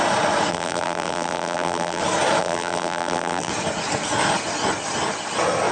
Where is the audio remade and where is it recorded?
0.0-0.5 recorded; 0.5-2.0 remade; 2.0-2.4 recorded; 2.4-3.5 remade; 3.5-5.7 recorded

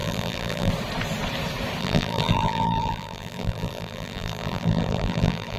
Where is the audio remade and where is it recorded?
0.0-0.7 remade; 0.7-1.8 recorded; 1.8-5.6 remade

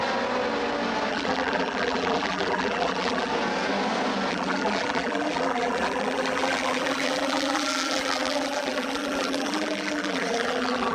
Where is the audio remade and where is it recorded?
0.0-1.1 recorded; 1.1-3.3 remade; 3.3-4.3 recorded; 4.3-10.9 remade

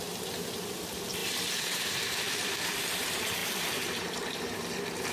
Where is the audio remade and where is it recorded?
0.0-5.1 remade

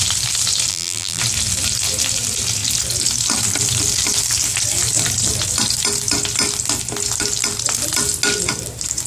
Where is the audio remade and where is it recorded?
0.0-0.7 recorded; 0.7-1.2 remade; 1.2-9.1 recorded